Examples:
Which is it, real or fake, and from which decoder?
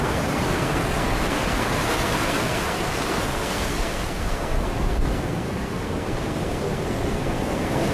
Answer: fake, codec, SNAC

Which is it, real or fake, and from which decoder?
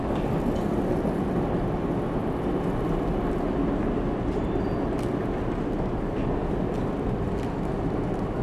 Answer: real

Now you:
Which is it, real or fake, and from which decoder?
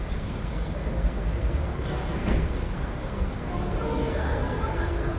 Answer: fake, codec, SNAC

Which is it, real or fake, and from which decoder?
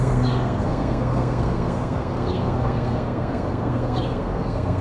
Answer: fake, codec, SNAC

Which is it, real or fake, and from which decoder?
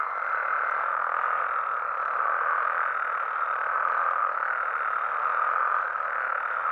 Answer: real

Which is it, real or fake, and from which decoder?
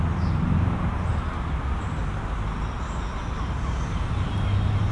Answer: real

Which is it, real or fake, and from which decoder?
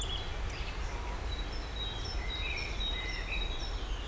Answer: real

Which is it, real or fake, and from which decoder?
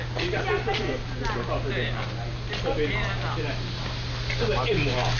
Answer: real